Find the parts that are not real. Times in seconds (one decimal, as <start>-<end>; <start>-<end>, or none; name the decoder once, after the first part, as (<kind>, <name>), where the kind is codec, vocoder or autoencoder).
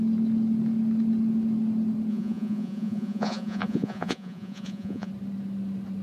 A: 2.1-5.1 (vocoder, Vocos)